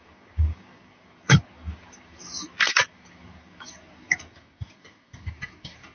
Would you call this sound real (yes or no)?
no